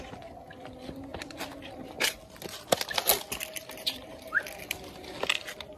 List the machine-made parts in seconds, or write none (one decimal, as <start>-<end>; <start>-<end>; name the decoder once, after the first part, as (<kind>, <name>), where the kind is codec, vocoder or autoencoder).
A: none